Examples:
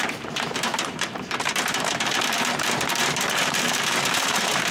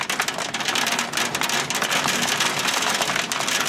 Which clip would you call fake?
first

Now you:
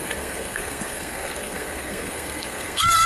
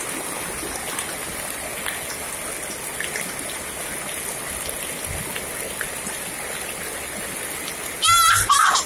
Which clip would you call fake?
first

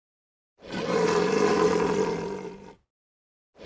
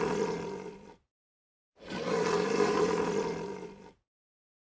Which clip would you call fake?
second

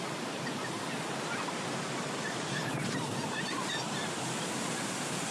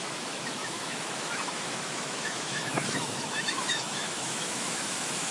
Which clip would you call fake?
second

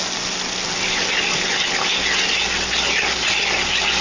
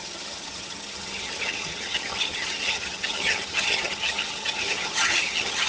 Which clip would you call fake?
second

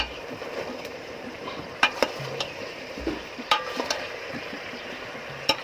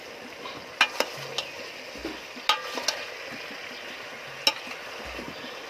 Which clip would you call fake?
first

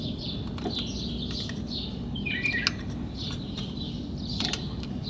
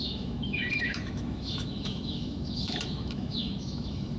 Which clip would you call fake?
second